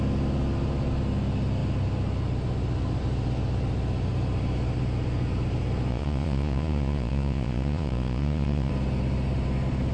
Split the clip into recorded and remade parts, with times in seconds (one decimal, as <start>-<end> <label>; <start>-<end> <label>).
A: 0.0-5.9 recorded; 5.9-8.7 remade; 8.7-9.9 recorded